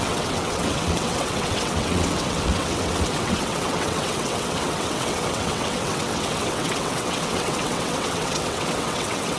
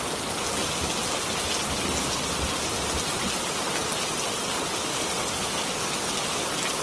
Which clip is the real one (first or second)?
second